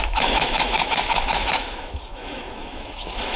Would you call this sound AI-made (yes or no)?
yes